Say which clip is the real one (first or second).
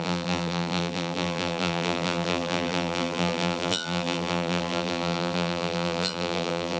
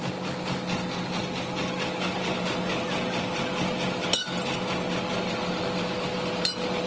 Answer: second